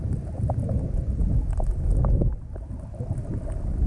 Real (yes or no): yes